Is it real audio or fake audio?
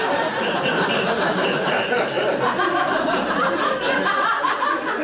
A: fake